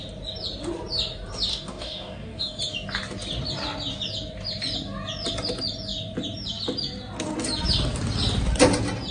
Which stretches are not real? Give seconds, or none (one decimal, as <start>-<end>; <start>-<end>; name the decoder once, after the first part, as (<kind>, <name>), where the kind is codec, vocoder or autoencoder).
1.5-2.6 (codec, DAC)